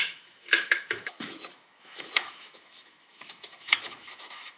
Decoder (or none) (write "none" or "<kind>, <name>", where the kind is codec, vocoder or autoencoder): autoencoder, DAC-VAE